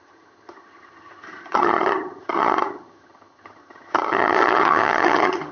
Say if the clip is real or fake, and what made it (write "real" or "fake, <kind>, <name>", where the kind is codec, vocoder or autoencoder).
fake, vocoder, HiFi-GAN